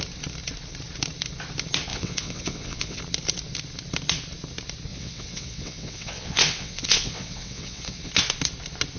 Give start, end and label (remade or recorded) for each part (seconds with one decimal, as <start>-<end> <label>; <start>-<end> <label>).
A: 0.0-1.9 recorded; 1.9-3.0 remade; 3.0-4.9 recorded; 4.9-8.1 remade; 8.1-9.0 recorded